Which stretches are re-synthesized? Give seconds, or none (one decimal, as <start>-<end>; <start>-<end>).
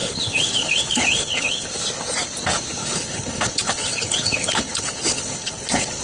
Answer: 0.0-1.7; 2.8-6.0